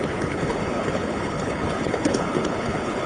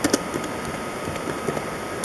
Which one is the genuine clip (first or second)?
second